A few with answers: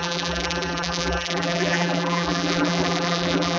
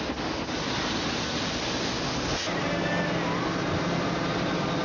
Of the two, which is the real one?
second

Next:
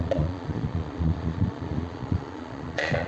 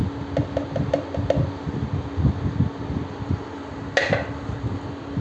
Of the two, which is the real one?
second